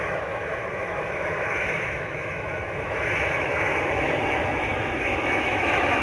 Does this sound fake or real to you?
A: fake